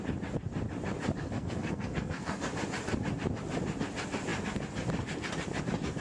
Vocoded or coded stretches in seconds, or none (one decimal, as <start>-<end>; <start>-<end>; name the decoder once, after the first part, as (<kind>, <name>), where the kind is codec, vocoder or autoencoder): 1.2-2.4 (codec, SNAC)